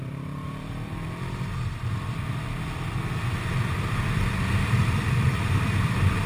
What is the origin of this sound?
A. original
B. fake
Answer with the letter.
B